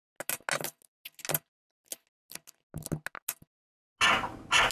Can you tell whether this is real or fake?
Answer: real